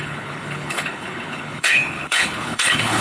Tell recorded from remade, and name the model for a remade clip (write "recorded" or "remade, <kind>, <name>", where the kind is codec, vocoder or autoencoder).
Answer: remade, codec, HILCodec